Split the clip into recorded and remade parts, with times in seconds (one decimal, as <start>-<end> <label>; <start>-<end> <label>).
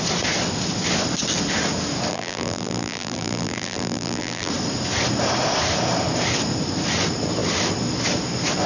0.0-2.1 recorded; 2.1-4.5 remade; 4.5-8.7 recorded